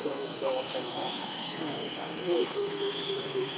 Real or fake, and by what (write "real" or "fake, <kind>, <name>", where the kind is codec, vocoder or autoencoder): fake, codec, SNAC